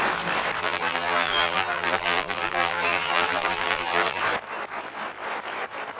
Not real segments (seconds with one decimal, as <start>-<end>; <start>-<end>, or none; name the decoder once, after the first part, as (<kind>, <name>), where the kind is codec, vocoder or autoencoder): 0.6-4.2 (vocoder, BigVGAN v2)